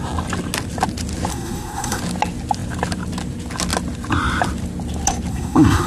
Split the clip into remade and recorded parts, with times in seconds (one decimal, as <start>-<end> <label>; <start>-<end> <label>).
0.0-1.3 recorded; 1.3-2.0 remade; 2.0-5.3 recorded; 5.3-5.9 remade